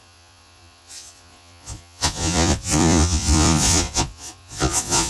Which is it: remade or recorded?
remade